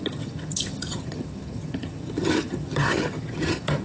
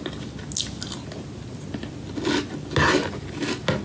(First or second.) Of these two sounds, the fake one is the first